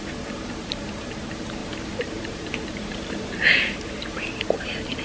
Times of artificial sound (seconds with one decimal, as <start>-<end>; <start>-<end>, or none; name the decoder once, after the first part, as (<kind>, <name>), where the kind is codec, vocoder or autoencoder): 1.6-4.6 (vocoder, BigVGAN v2)